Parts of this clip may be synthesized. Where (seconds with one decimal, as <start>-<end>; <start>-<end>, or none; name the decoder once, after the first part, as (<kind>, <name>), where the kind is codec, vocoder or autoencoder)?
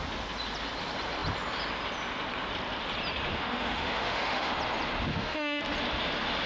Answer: 3.3-4.5 (autoencoder, DAC-VAE); 5.1-5.6